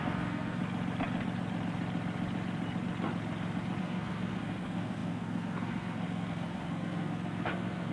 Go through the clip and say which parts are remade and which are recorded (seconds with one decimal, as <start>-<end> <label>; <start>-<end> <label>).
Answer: 0.0-0.6 remade; 0.6-3.8 recorded; 3.8-7.9 remade